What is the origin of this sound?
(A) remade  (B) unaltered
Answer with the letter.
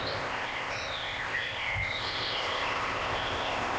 A